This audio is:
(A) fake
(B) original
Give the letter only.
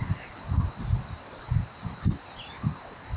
B